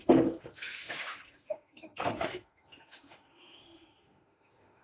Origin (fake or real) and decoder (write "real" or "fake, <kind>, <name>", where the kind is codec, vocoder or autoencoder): fake, autoencoder, DAC-VAE